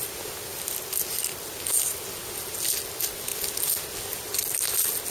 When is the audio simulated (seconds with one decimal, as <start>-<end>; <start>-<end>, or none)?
0.5-1.6